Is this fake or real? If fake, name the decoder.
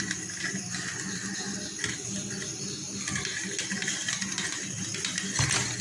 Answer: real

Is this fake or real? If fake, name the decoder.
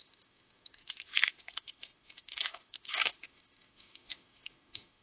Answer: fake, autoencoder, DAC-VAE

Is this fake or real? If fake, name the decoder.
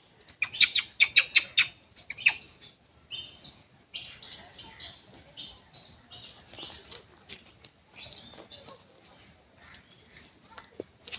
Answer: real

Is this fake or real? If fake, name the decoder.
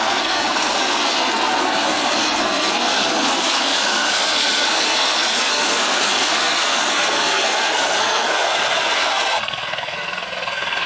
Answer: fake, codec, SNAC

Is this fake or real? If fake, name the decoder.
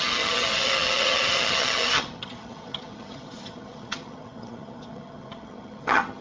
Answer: fake, vocoder, HiFi-GAN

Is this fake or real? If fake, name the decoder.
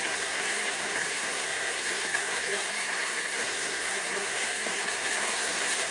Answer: fake, codec, SNAC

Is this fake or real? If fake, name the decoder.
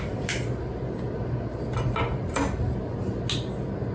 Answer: real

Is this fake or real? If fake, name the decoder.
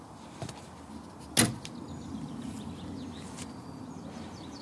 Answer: real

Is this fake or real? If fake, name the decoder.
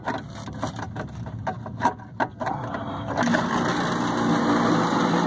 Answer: real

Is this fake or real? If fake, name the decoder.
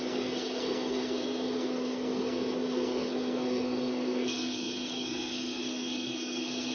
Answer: fake, codec, SNAC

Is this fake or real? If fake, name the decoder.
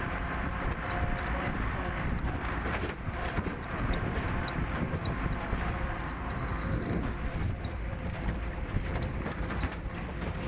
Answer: fake, vocoder, BigVGAN v2